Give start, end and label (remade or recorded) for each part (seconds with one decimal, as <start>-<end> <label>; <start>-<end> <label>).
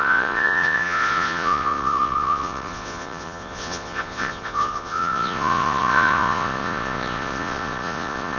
0.0-8.4 remade